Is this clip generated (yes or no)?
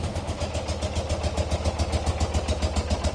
no